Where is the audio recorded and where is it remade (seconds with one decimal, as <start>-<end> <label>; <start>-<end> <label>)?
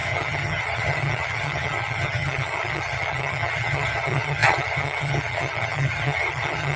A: 0.0-6.8 remade